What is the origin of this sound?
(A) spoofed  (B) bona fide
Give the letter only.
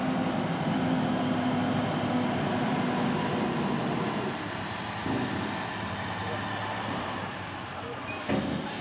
B